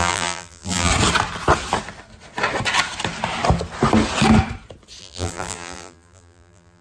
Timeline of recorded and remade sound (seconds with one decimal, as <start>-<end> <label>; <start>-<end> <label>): 0.0-0.9 remade; 0.9-5.0 recorded; 5.0-6.8 remade

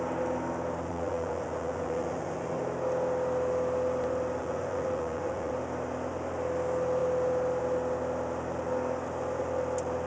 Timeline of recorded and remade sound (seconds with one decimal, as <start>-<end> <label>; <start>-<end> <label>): 0.0-0.9 recorded; 0.9-2.6 remade; 2.6-4.4 recorded; 4.4-5.5 remade; 5.5-10.1 recorded

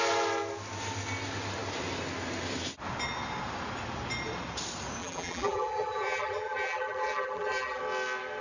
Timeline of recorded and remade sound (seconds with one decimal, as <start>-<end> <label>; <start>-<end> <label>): 0.0-5.0 recorded; 5.0-7.8 remade; 7.8-8.4 recorded